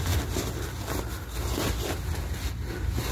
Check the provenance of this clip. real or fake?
real